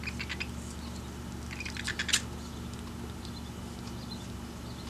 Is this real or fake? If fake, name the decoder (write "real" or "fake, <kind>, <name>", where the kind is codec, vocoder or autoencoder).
real